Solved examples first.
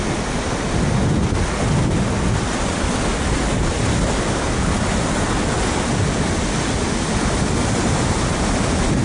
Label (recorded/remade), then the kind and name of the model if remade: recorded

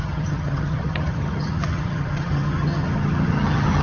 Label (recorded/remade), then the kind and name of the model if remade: remade, vocoder, HiFi-GAN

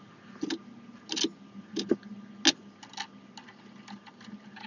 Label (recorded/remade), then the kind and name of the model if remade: recorded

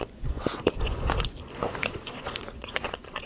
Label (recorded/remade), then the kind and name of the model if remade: remade, vocoder, Vocos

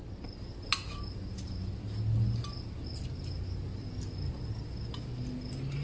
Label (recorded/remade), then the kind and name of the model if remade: recorded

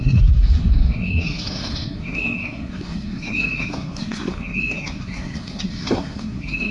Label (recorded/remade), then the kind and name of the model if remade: remade, codec, SNAC